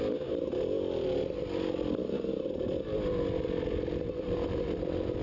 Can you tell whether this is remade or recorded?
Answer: recorded